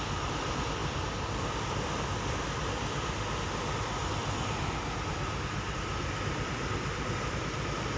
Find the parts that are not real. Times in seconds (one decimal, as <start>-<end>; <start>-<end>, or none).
none